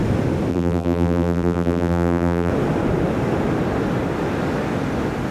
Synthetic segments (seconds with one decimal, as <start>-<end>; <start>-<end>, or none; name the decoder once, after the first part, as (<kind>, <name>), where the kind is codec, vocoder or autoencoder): 0.5-2.5 (vocoder, BigVGAN v2)